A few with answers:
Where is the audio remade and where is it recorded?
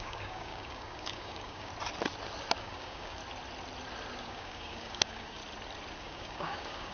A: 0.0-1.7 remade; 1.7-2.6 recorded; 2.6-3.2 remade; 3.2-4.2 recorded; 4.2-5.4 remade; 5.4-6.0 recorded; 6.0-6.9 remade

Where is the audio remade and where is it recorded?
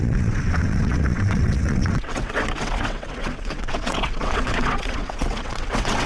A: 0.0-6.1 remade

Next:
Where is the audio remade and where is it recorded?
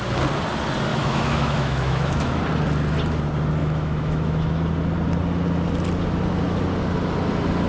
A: 0.0-0.9 recorded; 0.9-2.4 remade; 2.4-3.6 recorded; 3.6-4.5 remade; 4.5-7.7 recorded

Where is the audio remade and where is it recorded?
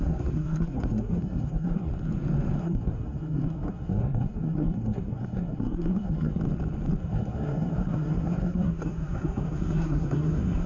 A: 0.0-1.9 remade; 1.9-2.6 recorded; 2.6-6.4 remade; 6.4-7.0 recorded; 7.0-10.7 remade